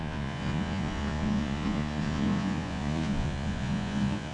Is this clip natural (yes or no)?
no